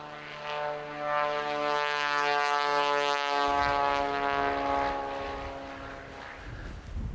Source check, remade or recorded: recorded